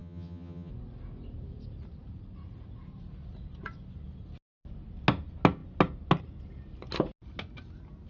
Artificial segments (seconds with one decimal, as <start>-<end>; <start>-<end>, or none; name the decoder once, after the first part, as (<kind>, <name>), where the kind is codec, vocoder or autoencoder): 0.0-0.7 (vocoder, HiFi-GAN)